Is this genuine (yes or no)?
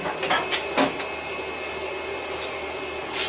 yes